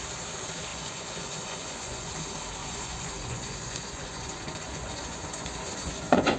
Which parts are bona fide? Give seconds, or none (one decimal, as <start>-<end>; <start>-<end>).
0.0-0.7; 2.1-2.6